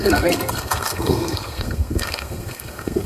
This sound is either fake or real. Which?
fake